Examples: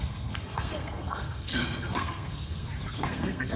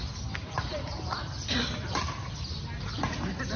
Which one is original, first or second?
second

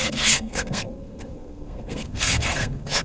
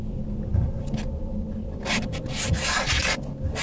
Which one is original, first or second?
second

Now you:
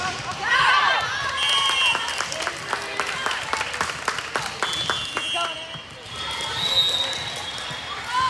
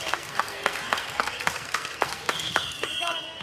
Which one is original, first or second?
first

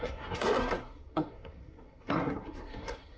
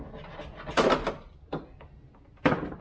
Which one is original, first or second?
second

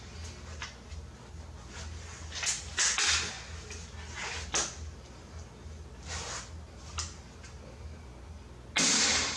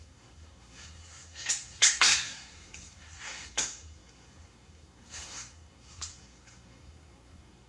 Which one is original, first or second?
first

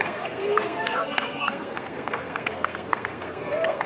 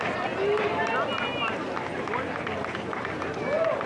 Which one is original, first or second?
second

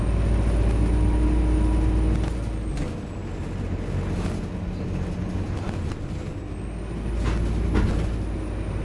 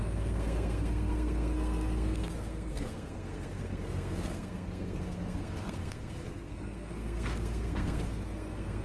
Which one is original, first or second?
first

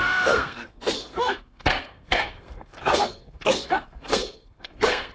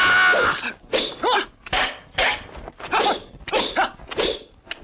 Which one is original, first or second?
second